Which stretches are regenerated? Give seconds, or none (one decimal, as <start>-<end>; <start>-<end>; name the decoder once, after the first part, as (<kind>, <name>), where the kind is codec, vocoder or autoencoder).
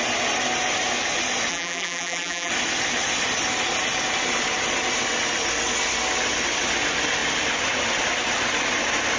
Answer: 1.5-2.5 (vocoder, BigVGAN v2)